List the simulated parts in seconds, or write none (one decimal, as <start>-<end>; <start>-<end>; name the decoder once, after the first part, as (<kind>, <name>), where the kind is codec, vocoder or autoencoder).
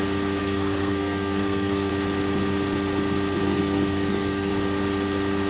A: 0.4-1.9 (codec, SNAC); 3.4-4.5